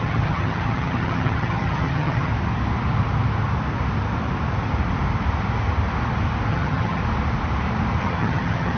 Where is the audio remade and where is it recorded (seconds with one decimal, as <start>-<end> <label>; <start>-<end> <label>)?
0.0-2.3 remade; 2.3-6.5 recorded; 6.5-7.0 remade; 7.0-8.0 recorded; 8.0-8.8 remade